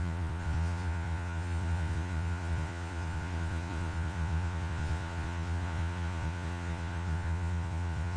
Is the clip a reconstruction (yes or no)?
yes